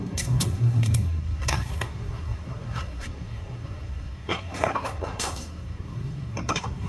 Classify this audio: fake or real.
fake